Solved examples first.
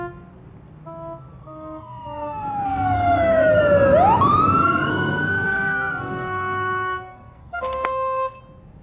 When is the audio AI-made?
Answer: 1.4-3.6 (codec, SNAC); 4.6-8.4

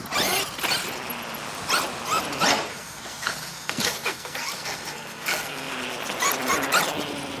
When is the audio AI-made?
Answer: 2.5-5.7 (codec, SNAC)

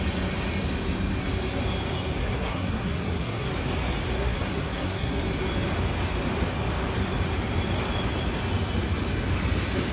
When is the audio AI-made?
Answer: 2.2-3.5 (codec, SNAC); 4.2-5.2